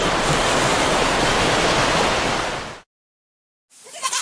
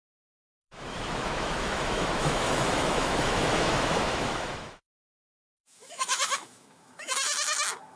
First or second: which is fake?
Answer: second